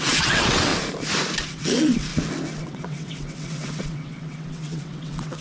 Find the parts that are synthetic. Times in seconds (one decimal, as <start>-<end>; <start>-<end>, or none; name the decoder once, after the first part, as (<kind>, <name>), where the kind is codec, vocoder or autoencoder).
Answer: 0.0-0.7 (vocoder, WaveNeXt); 1.5-2.1; 2.6-5.4